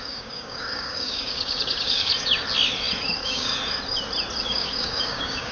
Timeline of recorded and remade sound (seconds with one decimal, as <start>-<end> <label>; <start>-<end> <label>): 0.0-2.1 remade; 2.1-3.0 recorded; 3.0-3.5 remade; 3.5-4.4 recorded; 4.4-5.5 remade